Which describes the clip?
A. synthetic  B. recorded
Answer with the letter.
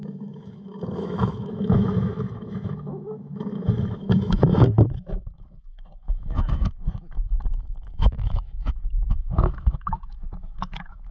A